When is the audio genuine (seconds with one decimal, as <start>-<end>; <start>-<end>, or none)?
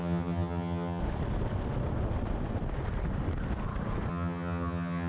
1.0-4.1